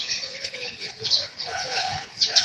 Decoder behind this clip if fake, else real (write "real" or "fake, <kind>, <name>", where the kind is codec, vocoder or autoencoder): fake, codec, HILCodec